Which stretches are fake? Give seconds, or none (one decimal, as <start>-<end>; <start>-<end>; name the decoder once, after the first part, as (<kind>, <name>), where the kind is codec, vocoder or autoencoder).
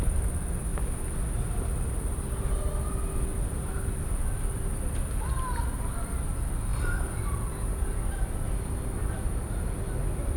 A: 3.3-4.2 (vocoder, BigVGAN v2)